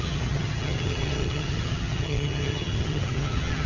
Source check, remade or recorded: remade